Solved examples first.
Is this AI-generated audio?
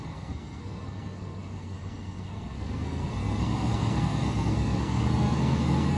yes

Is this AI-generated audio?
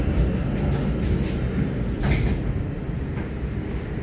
no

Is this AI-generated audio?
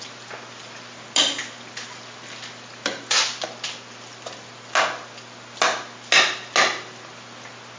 no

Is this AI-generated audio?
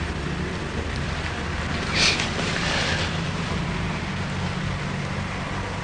yes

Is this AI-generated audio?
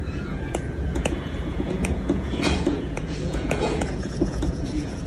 yes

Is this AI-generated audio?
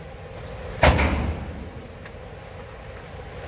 no